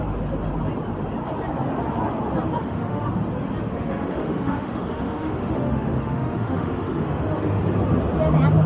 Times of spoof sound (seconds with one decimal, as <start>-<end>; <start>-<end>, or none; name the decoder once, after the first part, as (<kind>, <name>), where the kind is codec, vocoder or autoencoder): 2.6-3.1 (autoencoder, DAC-VAE); 3.7-7.6